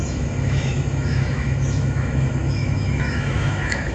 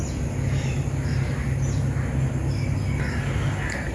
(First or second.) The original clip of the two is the second